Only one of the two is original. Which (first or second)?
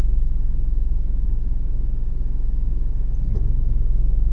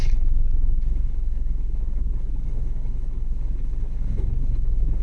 first